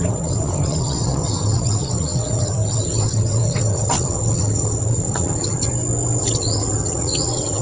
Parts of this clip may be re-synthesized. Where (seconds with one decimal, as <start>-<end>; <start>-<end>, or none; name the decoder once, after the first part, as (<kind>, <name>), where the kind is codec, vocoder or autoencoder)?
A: 0.0-5.7 (vocoder, WaveNeXt); 6.2-7.6